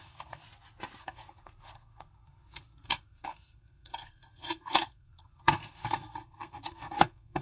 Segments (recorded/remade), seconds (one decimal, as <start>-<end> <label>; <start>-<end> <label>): 0.0-0.4 remade; 0.4-1.0 recorded; 1.0-7.4 remade

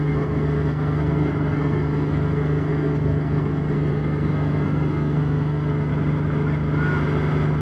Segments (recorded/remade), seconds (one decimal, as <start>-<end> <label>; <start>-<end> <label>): 0.0-5.9 remade; 5.9-7.6 recorded

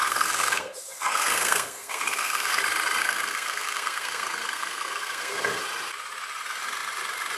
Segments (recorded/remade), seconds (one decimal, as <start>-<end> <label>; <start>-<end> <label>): 0.0-2.6 remade; 2.6-3.0 recorded; 3.0-5.6 remade; 5.6-7.4 recorded

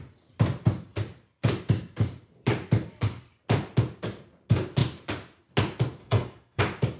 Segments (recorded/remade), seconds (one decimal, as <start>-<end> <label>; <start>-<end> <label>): 0.0-6.0 recorded; 6.0-6.6 remade; 6.6-7.0 recorded

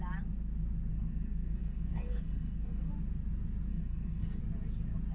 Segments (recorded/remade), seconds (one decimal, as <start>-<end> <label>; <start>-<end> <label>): 0.0-0.9 recorded; 0.9-2.9 remade; 2.9-3.7 recorded; 3.7-4.4 remade; 4.4-5.1 recorded